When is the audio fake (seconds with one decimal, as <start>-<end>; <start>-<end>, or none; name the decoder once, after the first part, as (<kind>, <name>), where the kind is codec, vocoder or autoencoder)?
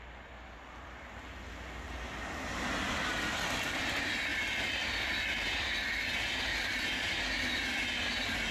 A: none